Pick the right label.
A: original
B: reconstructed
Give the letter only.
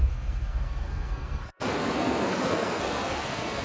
B